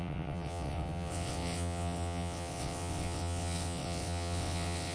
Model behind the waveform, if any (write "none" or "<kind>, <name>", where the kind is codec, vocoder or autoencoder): vocoder, WaveNeXt